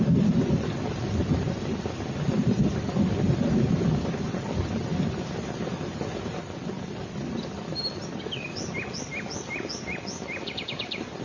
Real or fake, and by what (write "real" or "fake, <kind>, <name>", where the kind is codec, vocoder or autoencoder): real